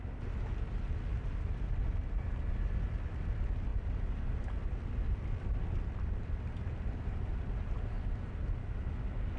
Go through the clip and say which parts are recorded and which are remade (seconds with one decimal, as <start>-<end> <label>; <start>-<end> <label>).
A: 0.0-1.1 recorded; 1.1-2.3 remade; 2.3-3.7 recorded; 3.7-7.2 remade; 7.2-9.4 recorded